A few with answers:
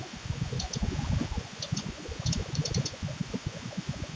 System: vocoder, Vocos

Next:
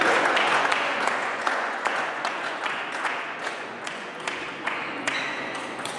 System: vocoder, Vocos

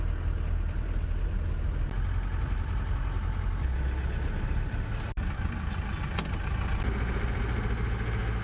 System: none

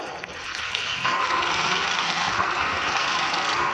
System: codec, SNAC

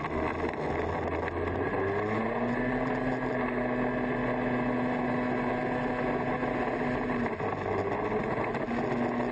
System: none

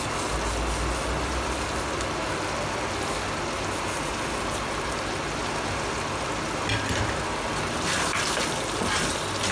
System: none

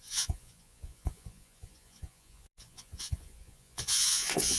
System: vocoder, Vocos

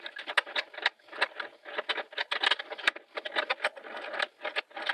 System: none